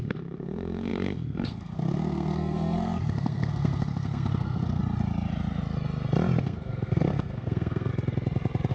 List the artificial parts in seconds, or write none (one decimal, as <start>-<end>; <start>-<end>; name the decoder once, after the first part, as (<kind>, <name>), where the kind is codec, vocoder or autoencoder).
0.0-4.8 (codec, SNAC); 6.4-7.9